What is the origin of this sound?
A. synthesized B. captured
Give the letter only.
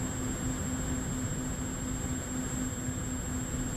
B